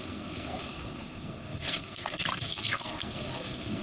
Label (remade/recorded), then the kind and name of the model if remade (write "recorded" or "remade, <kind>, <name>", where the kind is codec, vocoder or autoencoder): remade, codec, SNAC